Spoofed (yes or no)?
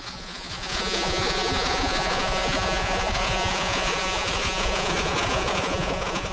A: yes